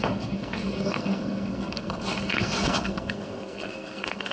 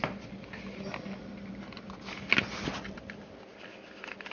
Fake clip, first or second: first